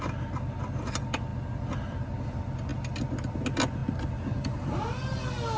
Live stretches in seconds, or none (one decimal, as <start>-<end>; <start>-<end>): 0.0-5.6